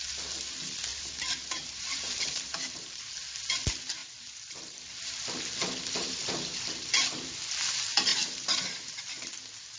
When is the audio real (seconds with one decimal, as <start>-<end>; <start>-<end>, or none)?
0.0-0.9; 3.0-4.0; 5.2-8.1; 9.3-9.8